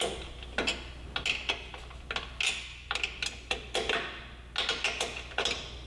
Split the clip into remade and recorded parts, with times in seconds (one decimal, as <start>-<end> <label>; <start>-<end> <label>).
0.0-5.9 recorded